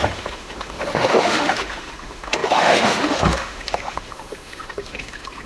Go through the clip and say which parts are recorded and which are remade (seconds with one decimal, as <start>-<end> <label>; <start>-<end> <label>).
0.0-5.5 remade